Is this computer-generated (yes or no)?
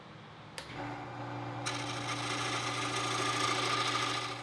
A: no